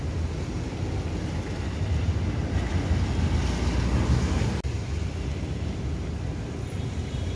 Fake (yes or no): no